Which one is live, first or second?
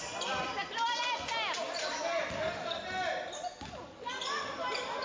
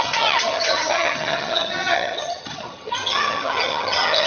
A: first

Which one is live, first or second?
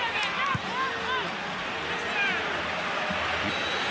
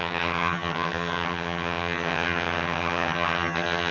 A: first